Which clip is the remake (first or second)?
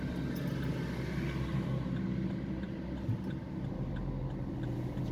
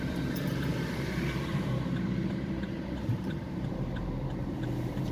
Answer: second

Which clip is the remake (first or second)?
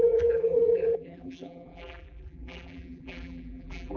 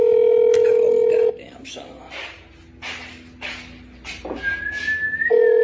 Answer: first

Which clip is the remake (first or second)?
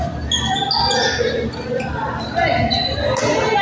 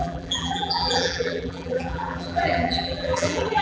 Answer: second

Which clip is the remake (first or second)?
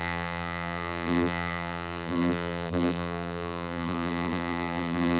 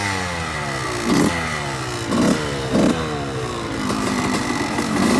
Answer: first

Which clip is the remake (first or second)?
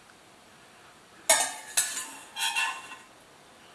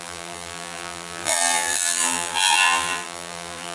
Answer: second